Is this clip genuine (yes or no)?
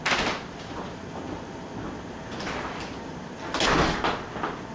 yes